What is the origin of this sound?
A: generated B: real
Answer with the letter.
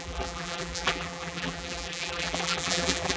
A